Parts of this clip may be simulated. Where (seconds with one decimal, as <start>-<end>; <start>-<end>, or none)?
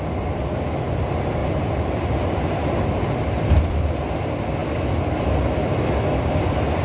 1.4-3.7